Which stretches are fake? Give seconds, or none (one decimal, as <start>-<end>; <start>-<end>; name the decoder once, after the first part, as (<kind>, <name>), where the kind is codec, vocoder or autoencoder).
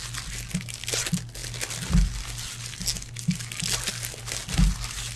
none